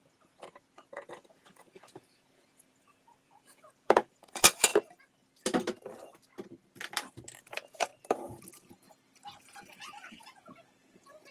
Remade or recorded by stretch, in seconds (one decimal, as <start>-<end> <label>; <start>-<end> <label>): 0.0-4.7 remade; 4.7-7.4 recorded; 7.4-7.9 remade; 7.9-9.4 recorded; 9.4-11.3 remade